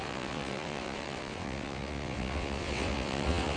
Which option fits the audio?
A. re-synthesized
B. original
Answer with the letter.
A